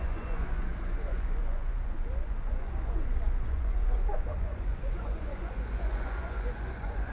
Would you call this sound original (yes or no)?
no